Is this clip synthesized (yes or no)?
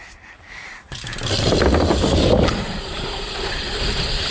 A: yes